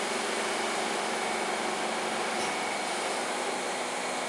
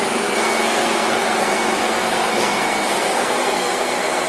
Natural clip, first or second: first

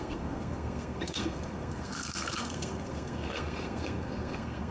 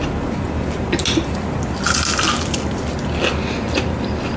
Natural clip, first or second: second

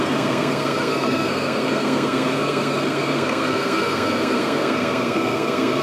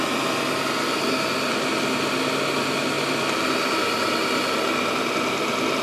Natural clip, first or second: second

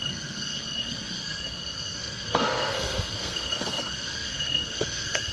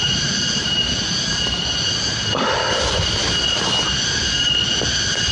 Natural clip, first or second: second